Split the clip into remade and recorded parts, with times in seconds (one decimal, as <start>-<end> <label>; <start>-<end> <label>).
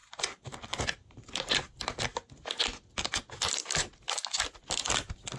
0.0-1.8 remade; 1.8-5.4 recorded